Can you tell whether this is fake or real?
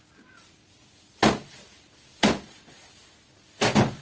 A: real